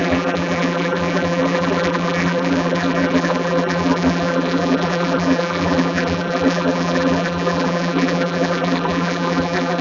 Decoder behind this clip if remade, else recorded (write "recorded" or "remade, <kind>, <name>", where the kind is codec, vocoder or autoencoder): remade, vocoder, BigVGAN v2